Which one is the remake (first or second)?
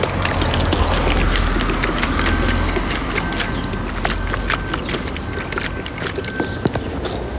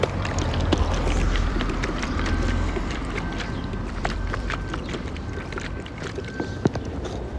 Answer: second